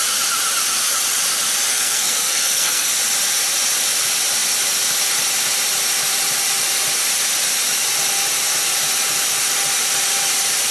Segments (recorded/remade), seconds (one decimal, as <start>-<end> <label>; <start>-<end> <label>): 0.0-1.7 recorded; 1.7-2.9 remade; 2.9-10.7 recorded